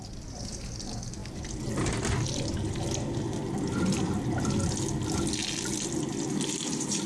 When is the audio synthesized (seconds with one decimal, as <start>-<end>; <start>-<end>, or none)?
none